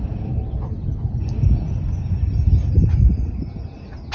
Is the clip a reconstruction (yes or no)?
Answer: no